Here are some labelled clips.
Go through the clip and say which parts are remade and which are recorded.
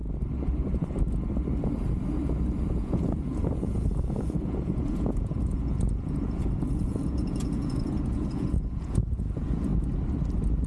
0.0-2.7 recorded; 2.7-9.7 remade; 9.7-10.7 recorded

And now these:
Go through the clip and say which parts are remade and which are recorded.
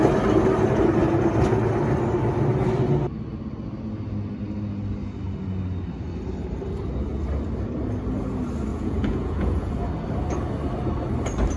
0.0-8.7 recorded; 8.7-9.7 remade; 9.7-11.6 recorded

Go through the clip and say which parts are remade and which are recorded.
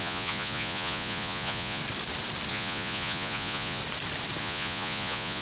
0.0-1.8 remade; 1.8-2.5 recorded; 2.5-3.8 remade; 3.8-4.4 recorded; 4.4-5.4 remade